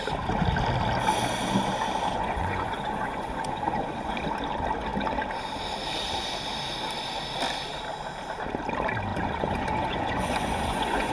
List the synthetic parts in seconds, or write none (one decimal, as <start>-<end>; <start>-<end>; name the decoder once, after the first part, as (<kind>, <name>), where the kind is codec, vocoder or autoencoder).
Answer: 2.1-4.2 (vocoder, Vocos); 9.1-11.1